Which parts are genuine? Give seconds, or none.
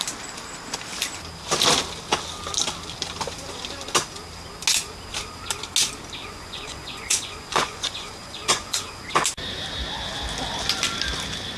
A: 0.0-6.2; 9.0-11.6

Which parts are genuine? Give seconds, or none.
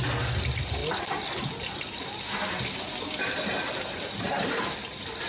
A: 0.0-5.3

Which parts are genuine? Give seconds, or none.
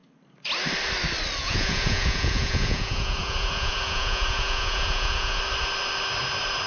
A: 0.0-1.4; 5.4-6.7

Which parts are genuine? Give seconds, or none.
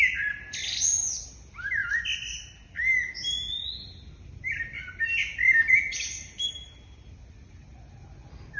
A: 0.0-8.6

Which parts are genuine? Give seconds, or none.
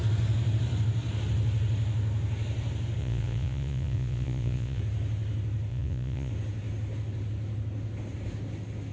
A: 0.0-3.0; 4.8-5.7; 6.3-8.9